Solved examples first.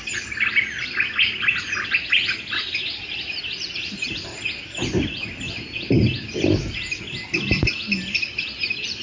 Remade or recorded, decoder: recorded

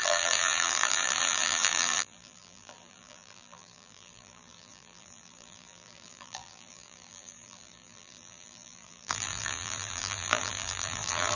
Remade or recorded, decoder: remade, vocoder, BigVGAN v2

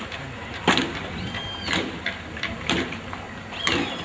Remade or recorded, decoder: remade, vocoder, BigVGAN v2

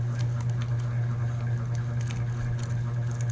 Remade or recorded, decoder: recorded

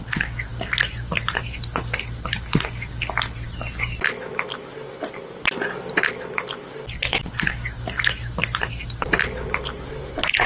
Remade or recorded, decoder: recorded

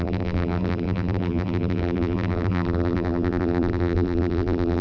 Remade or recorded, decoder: remade, vocoder, BigVGAN v2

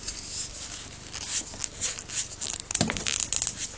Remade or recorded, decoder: recorded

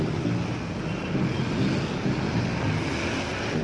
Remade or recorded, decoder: recorded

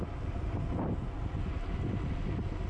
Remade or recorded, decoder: recorded